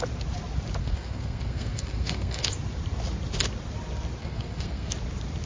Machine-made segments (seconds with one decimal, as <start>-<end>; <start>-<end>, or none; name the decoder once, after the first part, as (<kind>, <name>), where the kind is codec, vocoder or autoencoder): 0.8-2.5 (codec, SNAC); 4.2-4.9